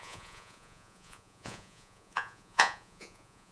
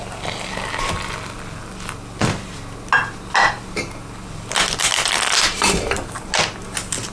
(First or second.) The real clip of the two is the second